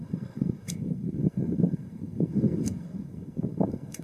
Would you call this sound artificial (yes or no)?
yes